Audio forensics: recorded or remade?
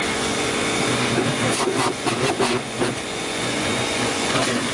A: remade